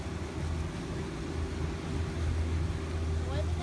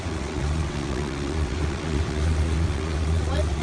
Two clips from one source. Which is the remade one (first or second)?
second